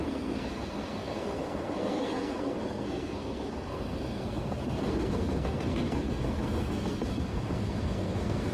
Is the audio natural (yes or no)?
no